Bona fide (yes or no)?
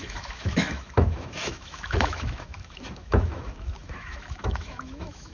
no